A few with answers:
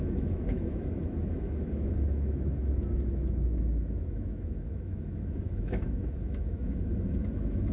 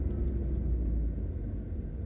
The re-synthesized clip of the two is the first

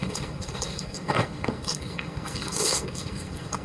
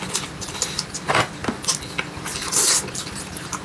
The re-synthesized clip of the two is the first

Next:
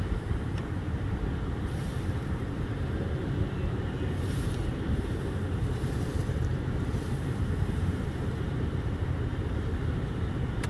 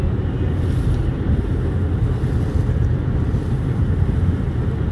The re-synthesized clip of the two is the first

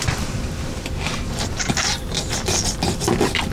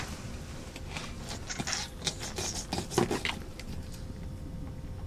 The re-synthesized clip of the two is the first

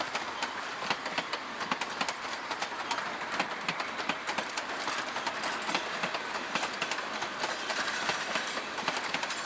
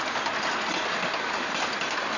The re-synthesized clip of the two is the first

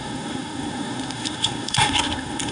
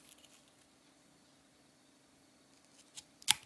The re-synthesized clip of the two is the first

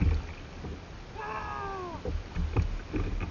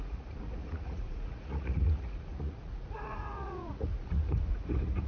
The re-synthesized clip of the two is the second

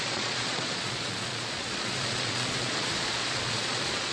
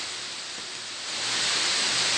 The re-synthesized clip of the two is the first